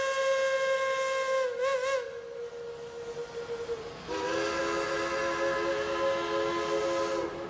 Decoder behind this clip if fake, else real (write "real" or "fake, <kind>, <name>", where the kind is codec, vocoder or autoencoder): real